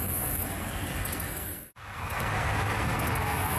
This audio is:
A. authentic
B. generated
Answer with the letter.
B